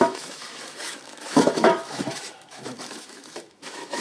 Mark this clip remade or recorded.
remade